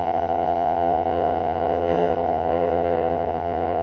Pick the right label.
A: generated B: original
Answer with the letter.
A